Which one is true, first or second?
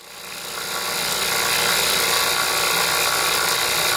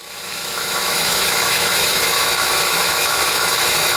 first